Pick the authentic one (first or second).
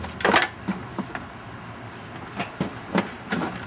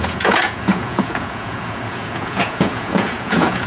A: first